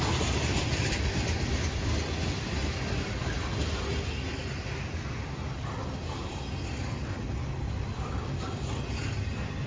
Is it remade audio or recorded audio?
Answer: recorded